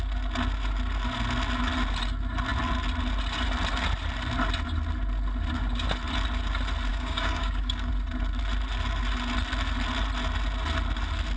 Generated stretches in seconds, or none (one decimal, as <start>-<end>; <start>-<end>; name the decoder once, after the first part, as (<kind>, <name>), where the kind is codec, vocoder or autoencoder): 6.9-7.9 (codec, DAC)